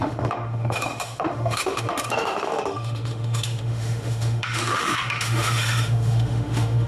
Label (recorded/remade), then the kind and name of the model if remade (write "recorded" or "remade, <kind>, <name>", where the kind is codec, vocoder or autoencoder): remade, autoencoder, DAC-VAE